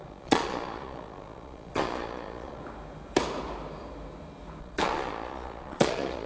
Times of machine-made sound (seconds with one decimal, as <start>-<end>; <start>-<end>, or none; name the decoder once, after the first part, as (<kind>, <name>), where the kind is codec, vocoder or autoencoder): 0.0-2.6 (vocoder, Vocos); 4.6-6.3